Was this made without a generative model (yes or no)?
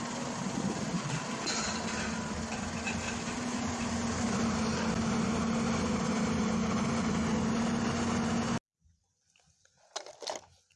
yes